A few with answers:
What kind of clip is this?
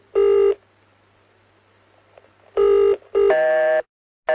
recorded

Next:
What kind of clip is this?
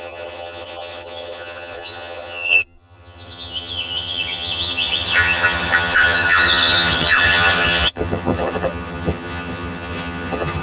remade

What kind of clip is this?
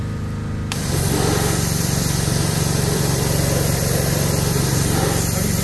remade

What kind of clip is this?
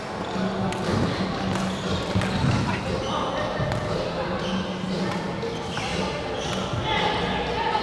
recorded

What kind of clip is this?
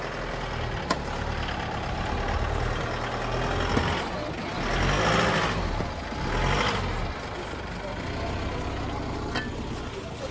recorded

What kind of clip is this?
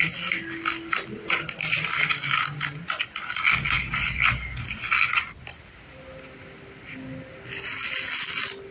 recorded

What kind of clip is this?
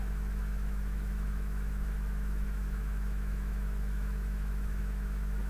remade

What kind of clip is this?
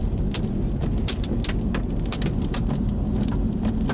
recorded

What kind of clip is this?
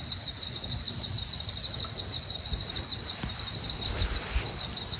recorded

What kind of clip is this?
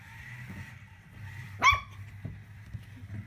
recorded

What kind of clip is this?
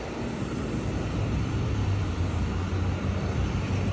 recorded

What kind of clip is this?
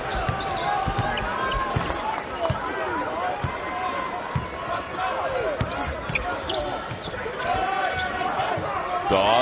recorded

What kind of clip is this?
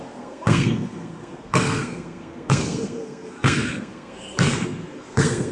remade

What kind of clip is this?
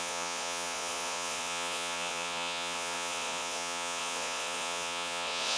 remade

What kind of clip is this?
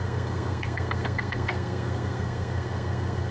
remade